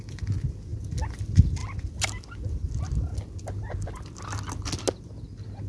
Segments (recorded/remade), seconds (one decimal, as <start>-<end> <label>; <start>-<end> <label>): 0.0-5.7 recorded